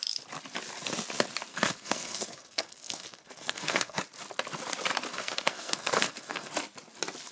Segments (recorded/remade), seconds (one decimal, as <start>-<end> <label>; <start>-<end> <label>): 0.0-1.5 recorded; 1.5-4.0 remade; 4.0-5.1 recorded; 5.1-6.5 remade; 6.5-7.3 recorded